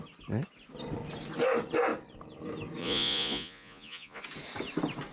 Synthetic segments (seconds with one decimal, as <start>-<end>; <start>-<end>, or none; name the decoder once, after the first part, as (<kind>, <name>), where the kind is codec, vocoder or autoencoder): 2.8-4.2 (vocoder, Vocos)